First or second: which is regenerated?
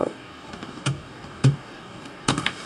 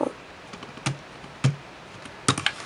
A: first